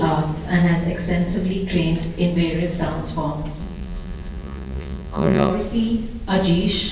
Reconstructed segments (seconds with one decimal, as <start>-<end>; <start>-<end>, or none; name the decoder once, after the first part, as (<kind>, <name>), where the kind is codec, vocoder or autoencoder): 3.6-5.5 (vocoder, Vocos)